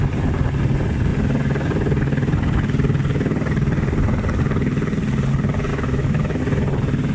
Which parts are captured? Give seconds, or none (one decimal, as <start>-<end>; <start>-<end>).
0.0-5.7; 6.4-7.1